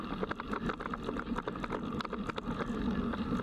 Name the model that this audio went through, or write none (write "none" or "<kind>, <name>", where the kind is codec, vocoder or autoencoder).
none